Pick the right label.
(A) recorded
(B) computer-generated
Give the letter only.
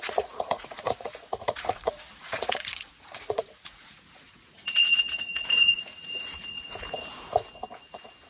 B